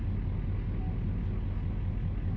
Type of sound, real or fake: real